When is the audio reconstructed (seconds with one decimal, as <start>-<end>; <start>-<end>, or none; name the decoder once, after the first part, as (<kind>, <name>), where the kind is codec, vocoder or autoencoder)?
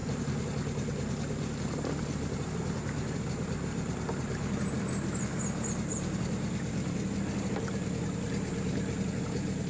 none